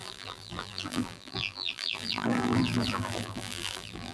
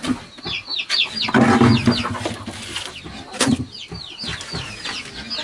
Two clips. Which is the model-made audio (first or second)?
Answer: first